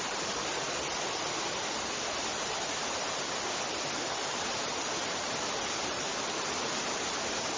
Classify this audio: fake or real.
real